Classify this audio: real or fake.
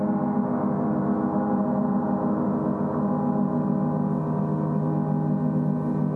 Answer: real